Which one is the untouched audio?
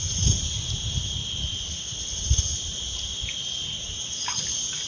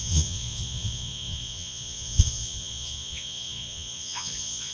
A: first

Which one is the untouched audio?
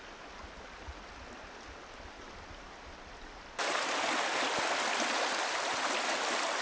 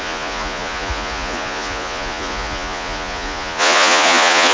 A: first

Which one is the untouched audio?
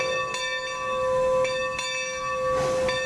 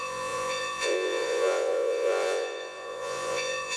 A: first